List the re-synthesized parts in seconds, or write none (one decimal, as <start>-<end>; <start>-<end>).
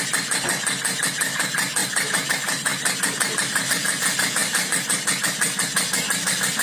1.8-2.3; 2.7-3.7